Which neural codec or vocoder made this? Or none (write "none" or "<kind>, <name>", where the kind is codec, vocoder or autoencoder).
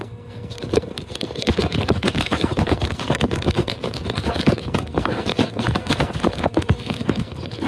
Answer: codec, SNAC